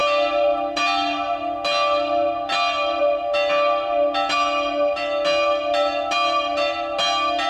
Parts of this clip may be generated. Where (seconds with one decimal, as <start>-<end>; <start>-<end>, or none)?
none